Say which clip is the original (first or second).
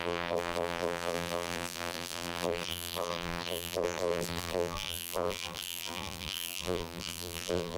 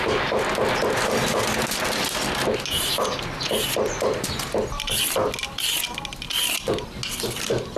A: second